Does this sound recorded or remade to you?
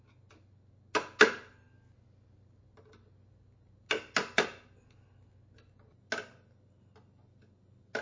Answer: recorded